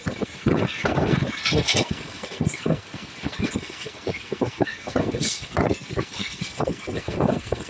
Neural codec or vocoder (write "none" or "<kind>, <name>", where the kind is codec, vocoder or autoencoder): codec, SNAC